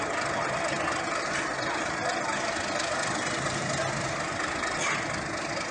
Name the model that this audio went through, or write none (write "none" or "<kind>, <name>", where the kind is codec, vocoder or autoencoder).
none